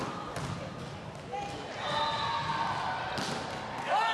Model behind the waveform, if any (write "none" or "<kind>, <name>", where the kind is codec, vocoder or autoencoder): none